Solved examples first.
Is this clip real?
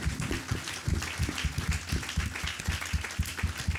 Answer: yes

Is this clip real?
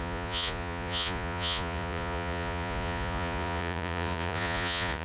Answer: no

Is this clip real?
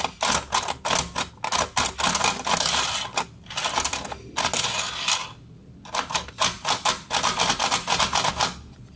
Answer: yes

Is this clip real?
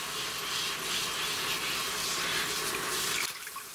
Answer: yes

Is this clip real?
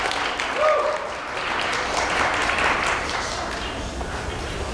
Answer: yes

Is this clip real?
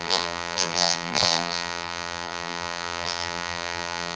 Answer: no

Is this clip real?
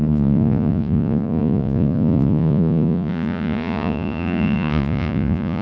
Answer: no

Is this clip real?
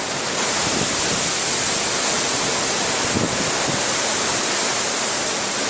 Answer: yes